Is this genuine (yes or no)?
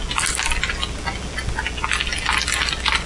yes